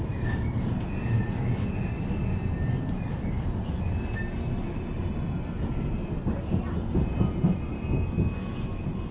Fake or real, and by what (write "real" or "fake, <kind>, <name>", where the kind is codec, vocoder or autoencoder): real